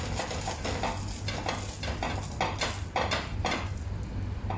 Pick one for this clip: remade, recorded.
recorded